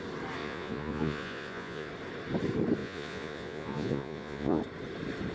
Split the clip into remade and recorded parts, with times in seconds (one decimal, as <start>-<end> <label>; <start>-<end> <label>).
0.0-0.4 recorded; 0.4-1.9 remade; 1.9-2.8 recorded; 2.8-4.6 remade; 4.6-5.3 recorded